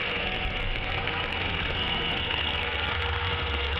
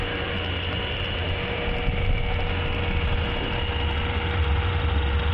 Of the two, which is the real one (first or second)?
second